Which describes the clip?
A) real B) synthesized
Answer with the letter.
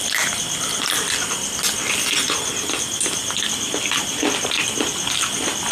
A